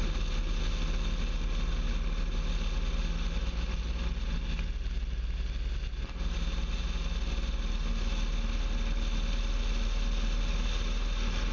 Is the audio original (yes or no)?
yes